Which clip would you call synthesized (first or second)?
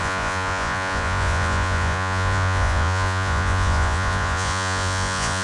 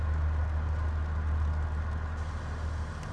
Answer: first